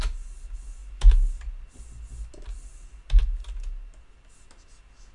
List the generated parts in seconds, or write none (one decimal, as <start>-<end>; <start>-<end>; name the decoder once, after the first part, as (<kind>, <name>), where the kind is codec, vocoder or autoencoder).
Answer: none